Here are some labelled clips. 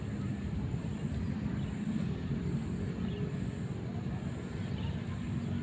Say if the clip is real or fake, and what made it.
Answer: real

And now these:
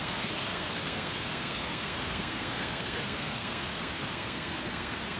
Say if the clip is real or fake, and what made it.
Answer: fake, codec, SNAC